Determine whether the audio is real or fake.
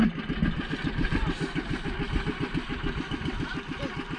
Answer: real